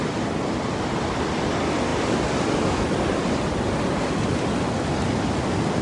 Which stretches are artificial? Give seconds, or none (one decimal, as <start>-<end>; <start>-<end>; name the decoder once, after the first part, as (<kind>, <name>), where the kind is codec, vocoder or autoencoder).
none